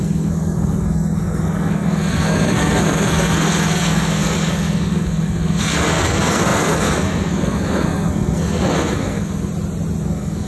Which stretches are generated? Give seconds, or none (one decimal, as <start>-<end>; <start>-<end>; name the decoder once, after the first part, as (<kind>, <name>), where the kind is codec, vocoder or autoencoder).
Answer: 0.0-9.5 (codec, SNAC); 10.0-10.5